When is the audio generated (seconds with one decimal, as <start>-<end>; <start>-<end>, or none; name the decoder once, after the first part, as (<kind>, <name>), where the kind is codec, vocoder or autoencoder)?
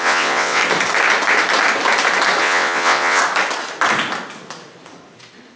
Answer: 0.0-0.6 (vocoder, WaveNeXt); 2.4-3.2